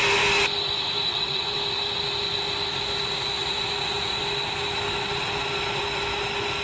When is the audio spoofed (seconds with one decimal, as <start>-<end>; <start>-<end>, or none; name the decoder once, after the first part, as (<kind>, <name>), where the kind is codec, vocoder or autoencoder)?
1.1-1.6 (vocoder, WaveNeXt)